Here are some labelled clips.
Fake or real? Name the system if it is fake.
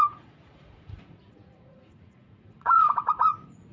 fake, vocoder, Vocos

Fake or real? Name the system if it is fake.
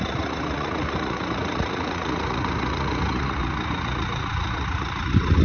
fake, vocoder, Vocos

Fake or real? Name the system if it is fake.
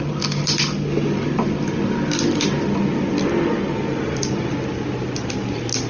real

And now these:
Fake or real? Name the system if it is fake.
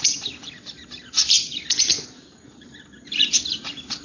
real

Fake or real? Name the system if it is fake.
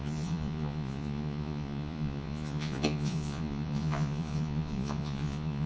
fake, vocoder, Vocos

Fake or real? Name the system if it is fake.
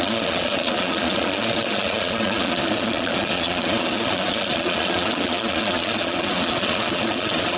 fake, vocoder, Vocos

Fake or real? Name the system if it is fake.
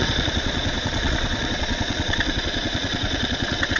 fake, vocoder, Vocos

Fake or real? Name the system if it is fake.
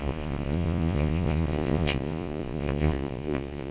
fake, vocoder, Vocos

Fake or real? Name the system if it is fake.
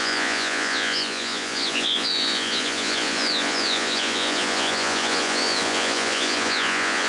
fake, vocoder, Vocos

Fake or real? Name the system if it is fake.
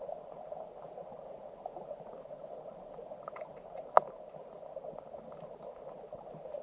real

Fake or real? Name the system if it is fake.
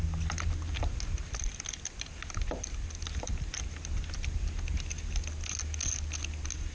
real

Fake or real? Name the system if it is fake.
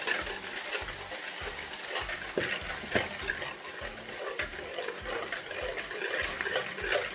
real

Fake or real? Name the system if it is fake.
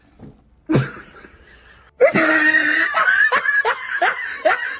real